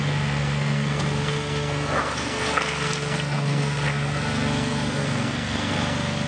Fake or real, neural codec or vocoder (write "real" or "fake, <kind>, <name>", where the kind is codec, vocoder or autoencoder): fake, codec, SNAC